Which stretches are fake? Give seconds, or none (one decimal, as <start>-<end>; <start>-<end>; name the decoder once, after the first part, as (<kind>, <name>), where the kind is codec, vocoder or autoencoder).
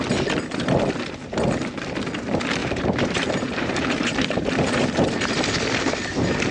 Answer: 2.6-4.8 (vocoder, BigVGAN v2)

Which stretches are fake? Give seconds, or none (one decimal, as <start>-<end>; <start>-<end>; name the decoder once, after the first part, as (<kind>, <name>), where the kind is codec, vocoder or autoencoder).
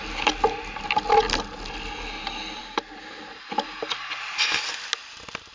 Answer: none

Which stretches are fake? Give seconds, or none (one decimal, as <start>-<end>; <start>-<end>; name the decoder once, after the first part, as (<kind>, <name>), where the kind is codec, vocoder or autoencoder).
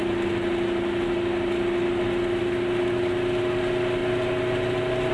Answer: none